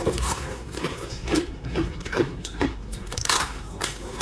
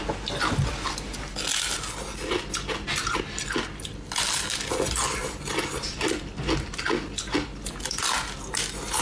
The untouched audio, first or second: second